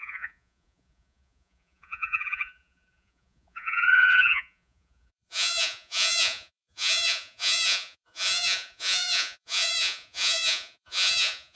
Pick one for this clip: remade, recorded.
remade